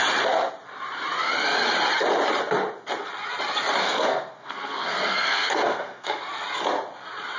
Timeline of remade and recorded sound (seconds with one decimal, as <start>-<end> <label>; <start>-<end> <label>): 0.0-3.8 recorded; 3.8-6.2 remade; 6.2-7.4 recorded